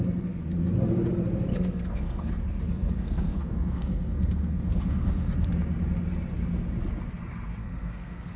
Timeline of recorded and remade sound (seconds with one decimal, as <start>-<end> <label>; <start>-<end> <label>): 0.0-1.5 recorded; 1.5-2.3 remade; 2.3-2.7 recorded; 2.7-5.3 remade; 5.3-7.6 recorded; 7.6-8.4 remade